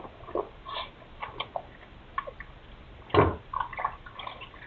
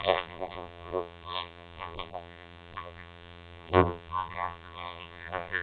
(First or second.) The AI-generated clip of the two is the second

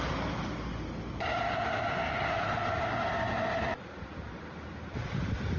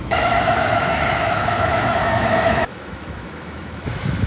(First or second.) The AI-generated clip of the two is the second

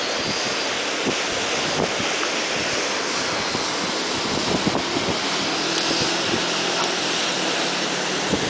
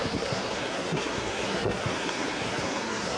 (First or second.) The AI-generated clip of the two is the second